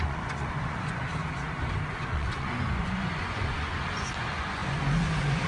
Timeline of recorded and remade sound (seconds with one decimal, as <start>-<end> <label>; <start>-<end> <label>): 0.0-1.0 remade; 1.0-1.9 recorded; 1.9-5.5 remade

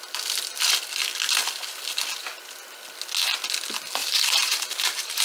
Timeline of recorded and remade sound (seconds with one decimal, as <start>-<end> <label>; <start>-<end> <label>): 0.0-4.0 recorded; 4.0-5.2 remade